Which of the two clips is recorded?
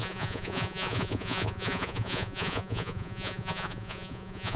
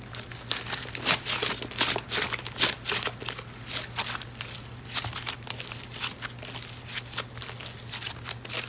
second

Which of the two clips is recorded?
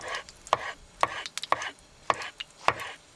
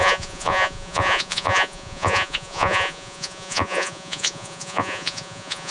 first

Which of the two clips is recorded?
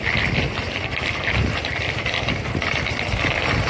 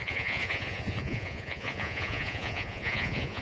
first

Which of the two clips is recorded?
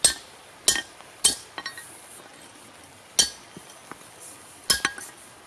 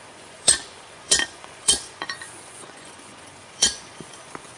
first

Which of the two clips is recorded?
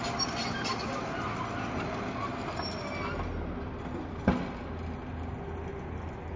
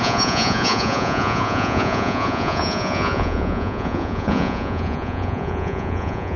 first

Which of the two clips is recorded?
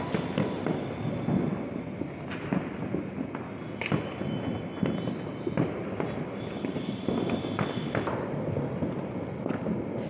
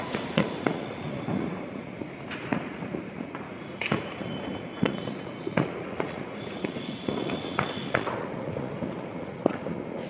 first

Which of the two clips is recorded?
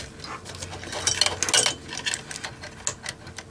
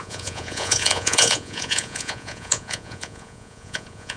first